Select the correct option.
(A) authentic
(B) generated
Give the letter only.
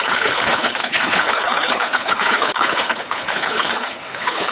B